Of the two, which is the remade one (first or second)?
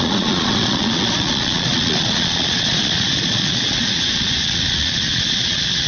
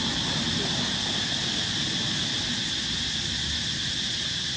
first